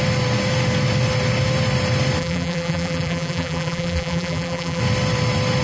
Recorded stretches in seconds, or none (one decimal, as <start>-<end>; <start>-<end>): 0.0-2.2; 4.8-5.6